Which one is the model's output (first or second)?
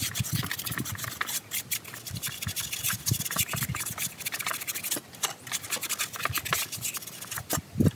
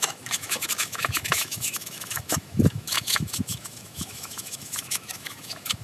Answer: second